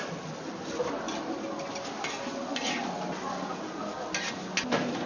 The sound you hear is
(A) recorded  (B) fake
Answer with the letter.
A